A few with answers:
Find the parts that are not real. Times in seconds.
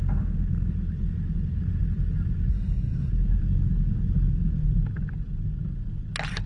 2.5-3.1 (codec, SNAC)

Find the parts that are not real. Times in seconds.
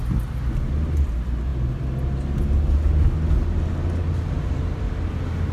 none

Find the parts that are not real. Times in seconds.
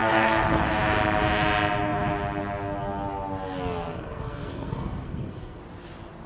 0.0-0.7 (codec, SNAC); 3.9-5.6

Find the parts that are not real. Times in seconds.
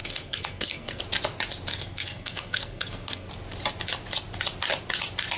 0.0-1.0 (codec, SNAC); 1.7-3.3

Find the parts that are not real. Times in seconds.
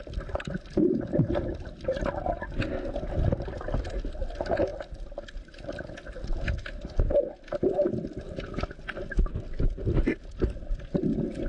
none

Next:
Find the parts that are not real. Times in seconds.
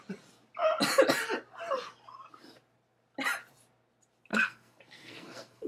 4.3-5.7 (codec, SNAC)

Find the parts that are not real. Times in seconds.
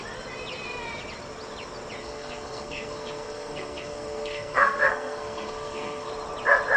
2.0-6.1 (codec, SNAC)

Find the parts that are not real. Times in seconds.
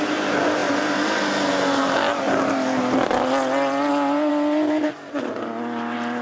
none